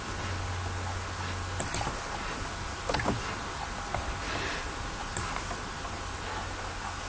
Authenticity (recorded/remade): recorded